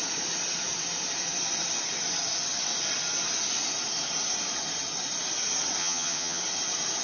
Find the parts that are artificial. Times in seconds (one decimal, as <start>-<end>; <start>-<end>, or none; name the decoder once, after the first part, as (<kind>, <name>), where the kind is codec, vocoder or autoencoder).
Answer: 5.8-6.4 (vocoder, HiFi-GAN)